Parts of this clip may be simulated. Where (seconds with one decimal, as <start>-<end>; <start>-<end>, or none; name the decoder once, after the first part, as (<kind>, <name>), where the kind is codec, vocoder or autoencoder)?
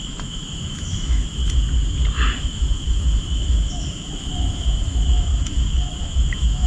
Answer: 0.0-1.4 (autoencoder, DAC-VAE); 2.4-6.7